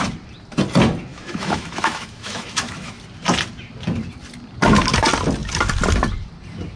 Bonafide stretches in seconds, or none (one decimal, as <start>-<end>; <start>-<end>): 0.0-1.1; 3.0-6.8